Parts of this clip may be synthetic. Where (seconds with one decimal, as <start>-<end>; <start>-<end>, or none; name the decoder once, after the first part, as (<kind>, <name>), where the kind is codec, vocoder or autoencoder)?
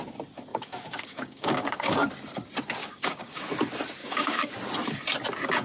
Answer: 0.5-2.1 (codec, DAC); 2.8-3.4; 4.0-4.5